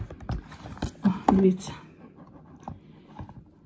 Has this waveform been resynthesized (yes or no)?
no